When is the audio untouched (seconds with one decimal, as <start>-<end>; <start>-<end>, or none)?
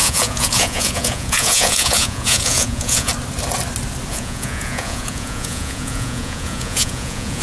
3.1-4.1